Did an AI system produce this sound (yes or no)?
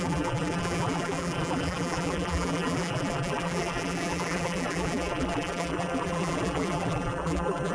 yes